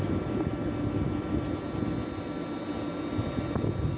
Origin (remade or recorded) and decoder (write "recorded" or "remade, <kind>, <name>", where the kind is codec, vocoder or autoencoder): recorded